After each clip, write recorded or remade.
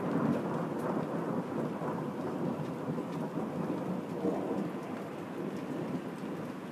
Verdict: recorded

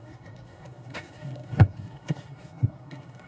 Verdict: remade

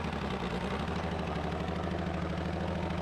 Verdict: recorded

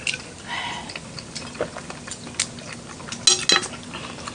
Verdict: recorded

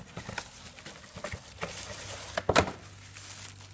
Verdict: recorded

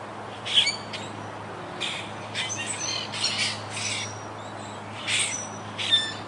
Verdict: recorded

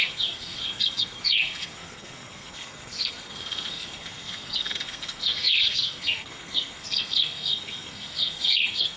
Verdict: remade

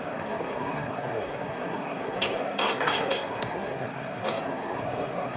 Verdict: remade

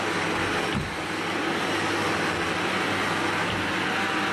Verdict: recorded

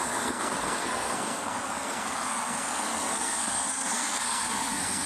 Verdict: remade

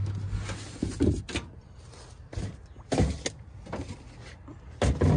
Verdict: recorded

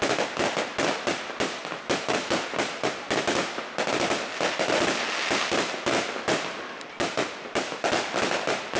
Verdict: recorded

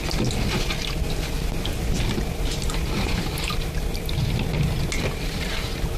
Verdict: recorded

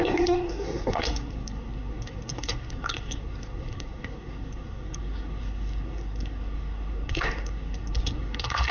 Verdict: remade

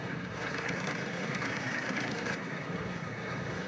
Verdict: remade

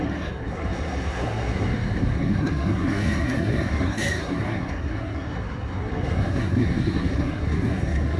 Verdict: remade